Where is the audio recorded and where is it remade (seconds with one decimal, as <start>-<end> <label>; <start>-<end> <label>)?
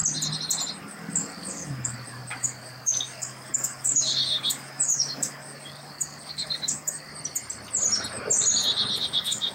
0.0-0.8 recorded; 0.8-7.1 remade; 7.1-9.0 recorded; 9.0-9.5 remade